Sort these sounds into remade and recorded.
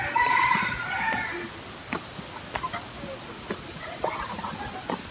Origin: recorded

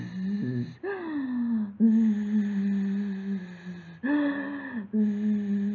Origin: recorded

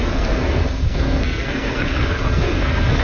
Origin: remade